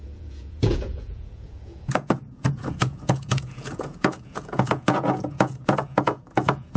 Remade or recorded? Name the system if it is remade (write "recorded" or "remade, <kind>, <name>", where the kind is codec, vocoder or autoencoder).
remade, vocoder, Vocos